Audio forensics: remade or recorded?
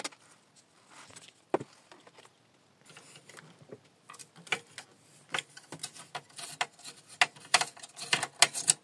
recorded